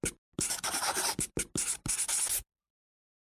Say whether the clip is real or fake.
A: real